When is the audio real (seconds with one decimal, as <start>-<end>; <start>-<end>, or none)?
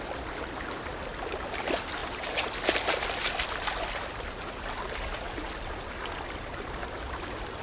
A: 0.0-7.6